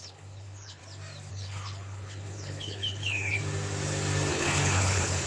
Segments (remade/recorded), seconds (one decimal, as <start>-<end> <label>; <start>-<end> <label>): 0.0-0.8 remade; 0.8-1.3 recorded; 1.3-3.4 remade; 3.4-4.3 recorded; 4.3-5.3 remade